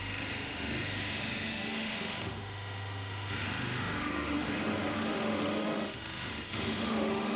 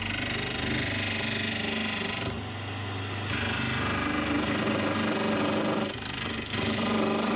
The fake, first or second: first